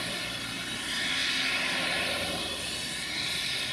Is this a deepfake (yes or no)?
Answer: no